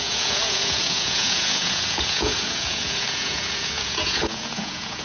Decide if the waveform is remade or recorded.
remade